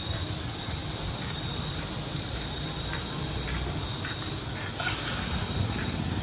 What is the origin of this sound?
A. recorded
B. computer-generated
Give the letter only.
A